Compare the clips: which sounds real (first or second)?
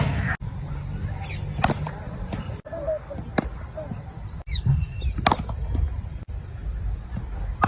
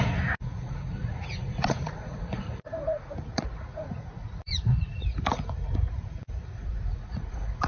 first